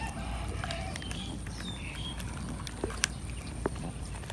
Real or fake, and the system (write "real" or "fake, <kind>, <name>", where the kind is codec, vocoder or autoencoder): fake, vocoder, BigVGAN v2